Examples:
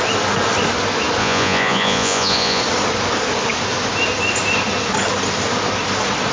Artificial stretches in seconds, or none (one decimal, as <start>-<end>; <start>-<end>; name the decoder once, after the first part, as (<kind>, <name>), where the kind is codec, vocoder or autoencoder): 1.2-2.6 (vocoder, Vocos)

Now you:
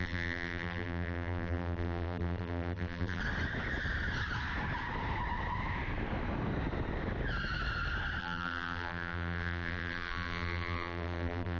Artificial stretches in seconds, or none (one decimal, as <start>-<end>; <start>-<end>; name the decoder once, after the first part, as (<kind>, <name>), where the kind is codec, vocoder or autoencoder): 0.0-3.2 (vocoder, BigVGAN v2); 8.2-11.6

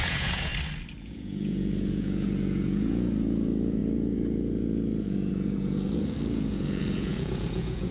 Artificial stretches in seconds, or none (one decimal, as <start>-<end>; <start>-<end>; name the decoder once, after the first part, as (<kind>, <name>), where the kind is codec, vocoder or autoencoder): 0.0-0.5 (vocoder, Vocos); 1.0-7.9